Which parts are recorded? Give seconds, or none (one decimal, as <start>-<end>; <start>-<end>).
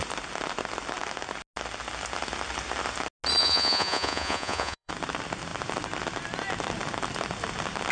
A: 0.0-3.4; 4.9-7.9